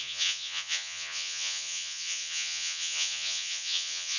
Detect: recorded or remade remade